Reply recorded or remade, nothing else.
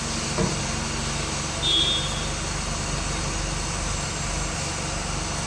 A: recorded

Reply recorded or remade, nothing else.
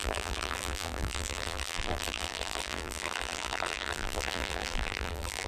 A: remade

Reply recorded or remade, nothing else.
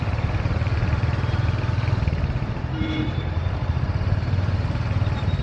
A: remade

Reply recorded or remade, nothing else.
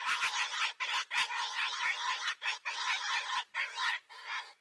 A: recorded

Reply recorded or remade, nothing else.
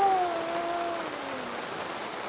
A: recorded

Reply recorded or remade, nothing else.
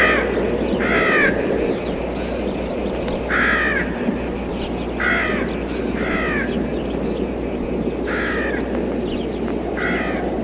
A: recorded